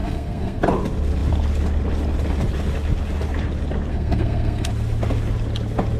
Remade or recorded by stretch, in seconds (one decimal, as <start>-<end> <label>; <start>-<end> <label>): 0.0-0.6 remade; 0.6-3.9 recorded; 3.9-4.7 remade; 4.7-6.0 recorded